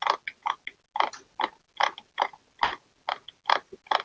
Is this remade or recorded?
recorded